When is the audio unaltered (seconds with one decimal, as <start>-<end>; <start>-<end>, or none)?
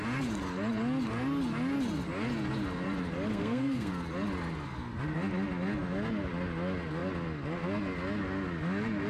0.0-3.3; 3.9-9.1